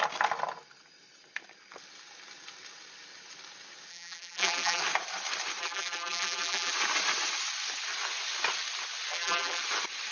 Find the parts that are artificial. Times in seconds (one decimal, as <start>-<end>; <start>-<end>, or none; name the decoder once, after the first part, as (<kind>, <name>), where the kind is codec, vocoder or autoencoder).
3.9-4.8 (vocoder, BigVGAN v2); 5.6-6.7; 9.1-9.6